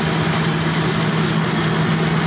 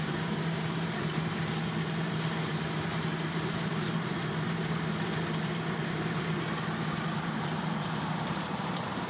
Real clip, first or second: first